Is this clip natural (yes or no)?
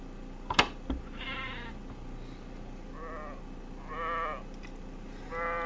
yes